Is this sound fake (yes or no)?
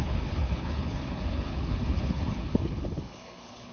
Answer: yes